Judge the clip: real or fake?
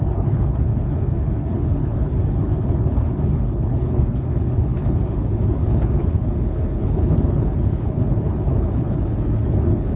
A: fake